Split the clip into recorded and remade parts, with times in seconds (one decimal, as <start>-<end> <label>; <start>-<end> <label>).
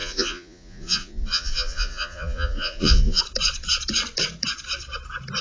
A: 0.0-3.2 remade; 3.2-5.4 recorded